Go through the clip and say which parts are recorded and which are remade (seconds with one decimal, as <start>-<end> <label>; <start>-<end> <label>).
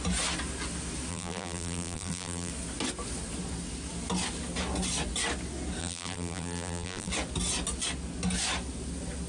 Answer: 0.0-1.1 recorded; 1.1-2.5 remade; 2.5-5.8 recorded; 5.8-7.1 remade; 7.1-9.3 recorded